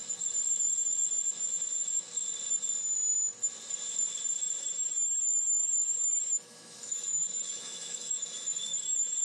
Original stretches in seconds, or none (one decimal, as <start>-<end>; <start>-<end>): 0.0-4.6